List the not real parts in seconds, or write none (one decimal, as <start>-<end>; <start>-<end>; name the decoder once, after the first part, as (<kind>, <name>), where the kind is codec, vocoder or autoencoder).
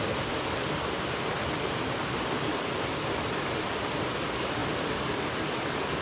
none